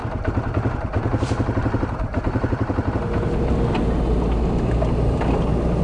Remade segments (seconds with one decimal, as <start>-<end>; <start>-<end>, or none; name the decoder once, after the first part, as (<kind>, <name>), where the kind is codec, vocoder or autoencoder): 0.0-2.9 (vocoder, BigVGAN v2)